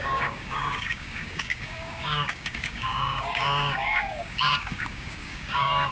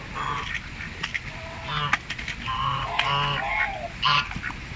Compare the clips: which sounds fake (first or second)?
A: first